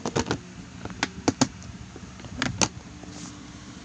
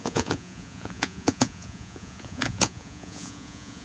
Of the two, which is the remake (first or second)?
second